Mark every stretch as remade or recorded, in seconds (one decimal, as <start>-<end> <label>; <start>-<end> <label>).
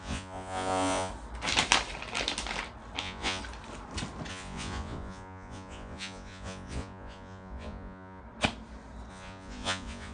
0.0-1.1 remade; 1.1-3.0 recorded; 3.0-3.4 remade; 3.4-4.3 recorded; 4.3-8.2 remade; 8.2-9.1 recorded; 9.1-10.1 remade